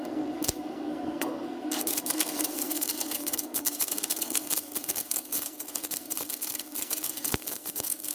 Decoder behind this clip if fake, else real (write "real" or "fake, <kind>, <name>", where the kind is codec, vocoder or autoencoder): fake, codec, SNAC